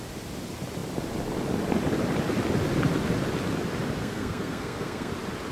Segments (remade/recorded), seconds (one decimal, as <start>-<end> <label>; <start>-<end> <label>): 0.0-4.0 recorded; 4.0-5.1 remade; 5.1-5.5 recorded